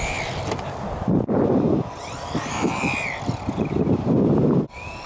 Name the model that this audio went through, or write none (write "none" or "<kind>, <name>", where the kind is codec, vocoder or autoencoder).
none